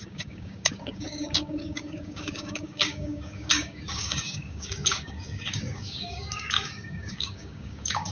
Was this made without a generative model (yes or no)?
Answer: no